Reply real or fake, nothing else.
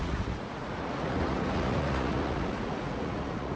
fake